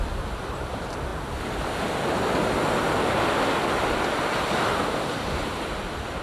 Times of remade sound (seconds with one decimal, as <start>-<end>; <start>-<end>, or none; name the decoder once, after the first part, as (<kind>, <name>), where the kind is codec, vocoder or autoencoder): none